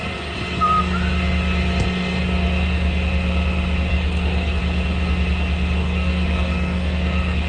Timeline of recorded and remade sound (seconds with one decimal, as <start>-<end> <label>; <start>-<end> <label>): 0.0-3.9 recorded; 3.9-4.6 remade; 4.6-5.8 recorded; 5.8-7.5 remade

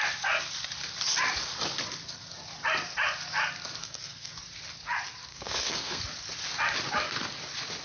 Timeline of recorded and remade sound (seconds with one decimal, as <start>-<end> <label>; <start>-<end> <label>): 0.0-3.8 recorded; 3.8-4.3 remade; 4.3-5.3 recorded; 5.3-6.0 remade; 6.0-7.8 recorded

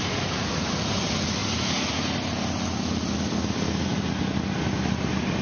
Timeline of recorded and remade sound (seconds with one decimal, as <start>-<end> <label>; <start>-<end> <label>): 0.0-5.4 recorded

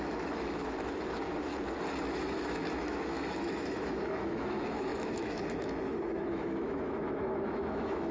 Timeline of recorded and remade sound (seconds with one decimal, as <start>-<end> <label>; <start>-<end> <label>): 0.0-1.5 remade; 1.5-2.2 recorded; 2.2-8.1 remade

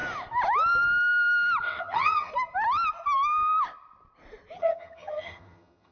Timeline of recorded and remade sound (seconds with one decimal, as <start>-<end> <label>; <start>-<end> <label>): 0.0-1.6 recorded; 1.6-2.3 remade; 2.3-4.6 recorded; 4.6-5.9 remade

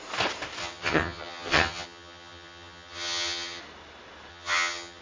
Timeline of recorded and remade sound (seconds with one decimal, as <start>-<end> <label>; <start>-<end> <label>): 0.0-0.6 recorded; 0.6-3.6 remade; 3.6-4.3 recorded; 4.3-5.0 remade

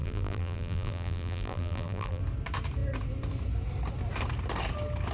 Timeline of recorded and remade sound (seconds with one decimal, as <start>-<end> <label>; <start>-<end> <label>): 0.0-2.2 remade; 2.2-5.1 recorded

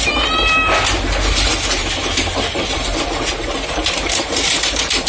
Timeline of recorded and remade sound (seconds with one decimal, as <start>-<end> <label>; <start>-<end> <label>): 0.0-1.8 recorded; 1.8-5.1 remade